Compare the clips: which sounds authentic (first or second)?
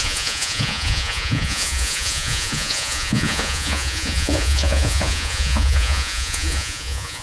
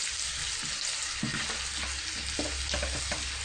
second